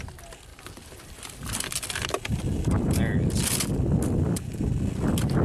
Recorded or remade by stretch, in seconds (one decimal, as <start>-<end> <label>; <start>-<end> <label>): 0.0-0.5 recorded; 0.5-3.7 remade; 3.7-5.4 recorded